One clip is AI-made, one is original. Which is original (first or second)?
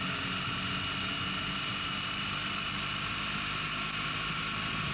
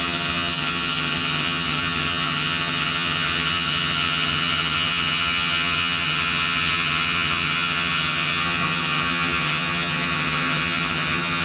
first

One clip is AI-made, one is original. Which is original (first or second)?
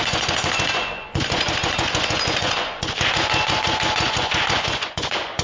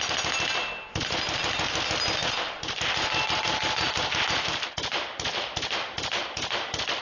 second